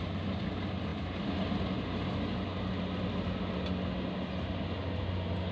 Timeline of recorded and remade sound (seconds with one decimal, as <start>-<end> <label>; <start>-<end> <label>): 0.0-5.5 recorded